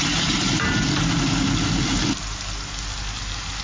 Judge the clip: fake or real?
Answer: real